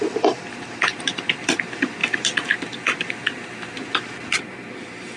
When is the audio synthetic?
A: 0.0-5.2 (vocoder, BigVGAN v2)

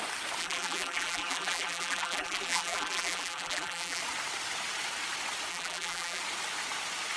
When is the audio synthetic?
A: 0.4-4.0 (vocoder, BigVGAN v2); 5.5-6.2